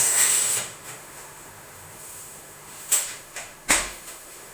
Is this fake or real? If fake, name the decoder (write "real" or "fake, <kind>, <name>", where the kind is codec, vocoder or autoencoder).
fake, autoencoder, DAC-VAE